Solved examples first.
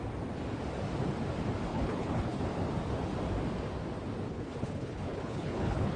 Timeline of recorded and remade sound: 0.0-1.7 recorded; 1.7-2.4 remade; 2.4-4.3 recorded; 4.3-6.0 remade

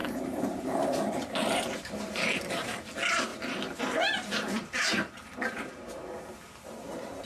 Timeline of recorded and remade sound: 0.0-2.8 remade; 2.8-3.3 recorded; 3.3-7.3 remade

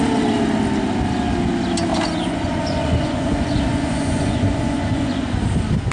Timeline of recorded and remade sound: 0.0-1.9 recorded; 1.9-5.4 remade; 5.4-5.9 recorded

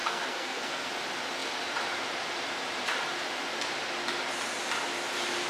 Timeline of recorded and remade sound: 0.0-0.9 remade; 0.9-5.5 recorded

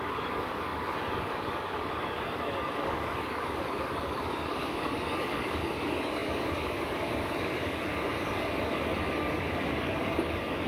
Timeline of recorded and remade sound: 0.0-10.7 remade

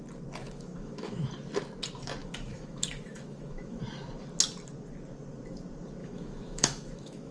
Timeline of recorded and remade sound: 0.0-0.4 recorded; 0.4-1.3 remade; 1.3-2.2 recorded; 2.2-3.8 remade; 3.8-6.0 recorded; 6.0-7.3 remade